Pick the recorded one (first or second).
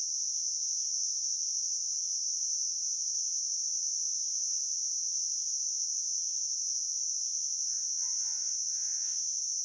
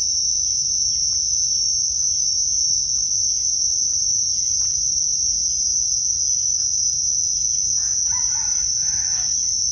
second